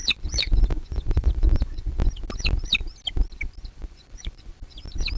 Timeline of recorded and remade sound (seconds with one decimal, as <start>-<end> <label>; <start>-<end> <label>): 0.0-2.0 remade; 2.0-3.8 recorded; 3.8-4.5 remade; 4.5-5.2 recorded